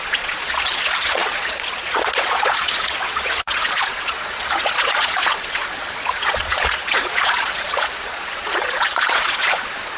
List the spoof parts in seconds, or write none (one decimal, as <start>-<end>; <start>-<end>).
0.0-10.0